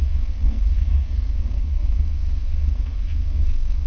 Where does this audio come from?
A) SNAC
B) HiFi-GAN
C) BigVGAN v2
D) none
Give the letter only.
A